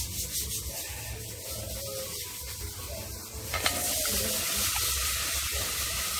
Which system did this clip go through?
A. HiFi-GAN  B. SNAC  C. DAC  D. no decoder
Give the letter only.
D